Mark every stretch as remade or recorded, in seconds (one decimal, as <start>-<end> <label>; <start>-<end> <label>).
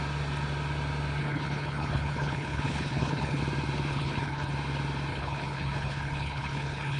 0.0-1.2 recorded; 1.2-3.4 remade; 3.4-3.9 recorded; 3.9-4.5 remade; 4.5-5.1 recorded; 5.1-7.0 remade